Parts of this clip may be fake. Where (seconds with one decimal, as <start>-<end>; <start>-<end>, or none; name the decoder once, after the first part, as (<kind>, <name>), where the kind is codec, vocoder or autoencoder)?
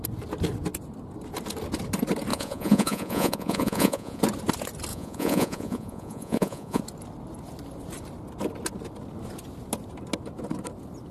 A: 2.3-4.2 (vocoder, Vocos); 4.9-6.8